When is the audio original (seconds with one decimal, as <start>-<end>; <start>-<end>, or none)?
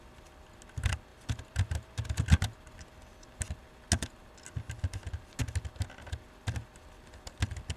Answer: 0.0-7.8